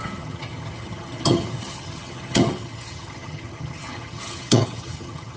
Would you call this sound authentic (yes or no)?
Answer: no